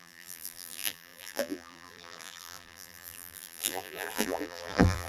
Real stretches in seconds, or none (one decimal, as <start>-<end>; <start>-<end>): none